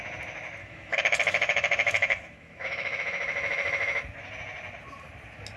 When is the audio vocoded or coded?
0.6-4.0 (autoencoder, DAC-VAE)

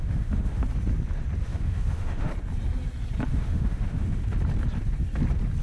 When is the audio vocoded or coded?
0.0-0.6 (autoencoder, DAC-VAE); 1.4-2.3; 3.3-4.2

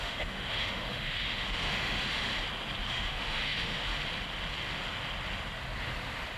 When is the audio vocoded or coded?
0.0-2.3 (autoencoder, DAC-VAE); 2.9-3.9

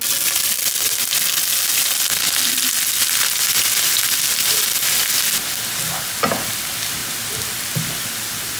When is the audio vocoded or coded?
none

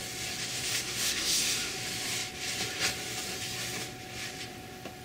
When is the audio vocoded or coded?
0.4-1.8 (autoencoder, DAC-VAE)